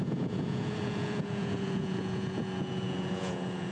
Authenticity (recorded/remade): remade